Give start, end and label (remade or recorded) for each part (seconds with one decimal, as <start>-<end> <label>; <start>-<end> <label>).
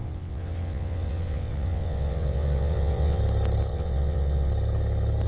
0.0-3.2 remade; 3.2-3.7 recorded; 3.7-4.5 remade; 4.5-5.3 recorded